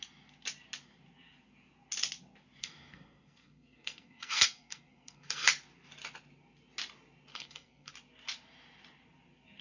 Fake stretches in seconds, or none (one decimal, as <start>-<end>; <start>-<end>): 2.6-5.5; 7.3-7.9